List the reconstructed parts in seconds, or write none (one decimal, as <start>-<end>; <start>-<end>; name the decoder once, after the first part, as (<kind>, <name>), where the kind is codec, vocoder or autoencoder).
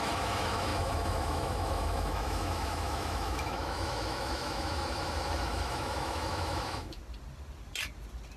0.0-7.0 (autoencoder, DAC-VAE)